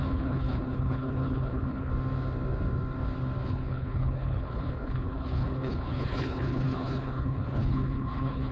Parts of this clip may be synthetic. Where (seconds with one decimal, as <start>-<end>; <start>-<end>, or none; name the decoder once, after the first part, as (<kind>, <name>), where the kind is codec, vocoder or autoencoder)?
0.0-1.9 (codec, HILCodec); 3.5-8.5